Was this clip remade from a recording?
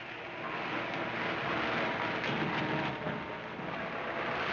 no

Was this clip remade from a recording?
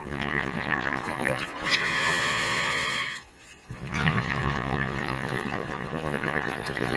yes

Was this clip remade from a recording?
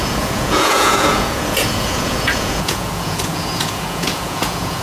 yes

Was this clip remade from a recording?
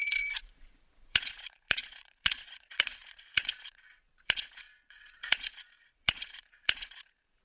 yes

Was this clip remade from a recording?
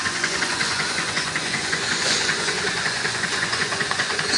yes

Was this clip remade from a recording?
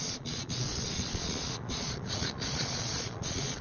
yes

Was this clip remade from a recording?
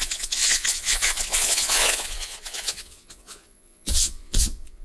yes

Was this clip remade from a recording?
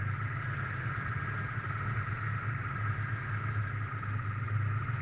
no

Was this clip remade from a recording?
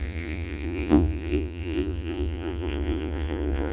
yes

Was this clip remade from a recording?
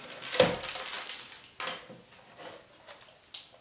no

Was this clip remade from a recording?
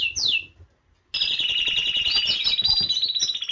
no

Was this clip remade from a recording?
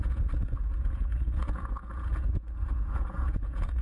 yes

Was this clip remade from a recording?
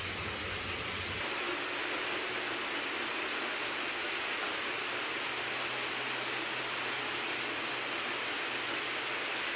no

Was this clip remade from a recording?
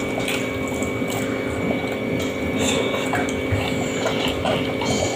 no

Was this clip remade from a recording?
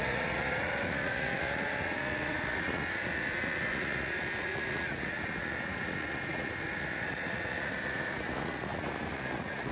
yes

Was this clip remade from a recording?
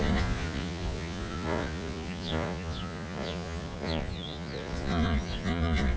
yes